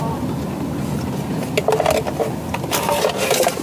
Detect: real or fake real